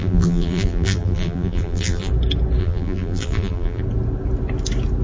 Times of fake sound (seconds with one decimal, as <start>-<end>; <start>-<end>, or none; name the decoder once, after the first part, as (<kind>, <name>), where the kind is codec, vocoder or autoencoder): 0.0-2.1 (vocoder, BigVGAN v2); 2.6-3.8